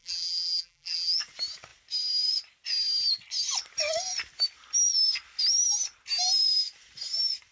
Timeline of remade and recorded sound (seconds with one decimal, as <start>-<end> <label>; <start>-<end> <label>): 0.0-1.2 remade; 1.2-7.5 recorded